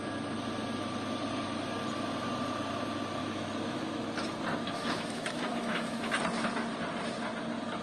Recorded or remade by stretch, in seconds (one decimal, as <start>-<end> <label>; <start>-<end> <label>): 0.0-3.2 recorded; 3.2-4.0 remade; 4.0-4.6 recorded; 4.6-6.1 remade; 6.1-7.8 recorded